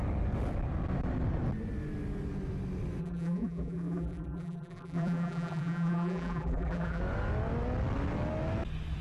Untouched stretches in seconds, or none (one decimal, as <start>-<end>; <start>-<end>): 0.0-3.0; 7.0-9.0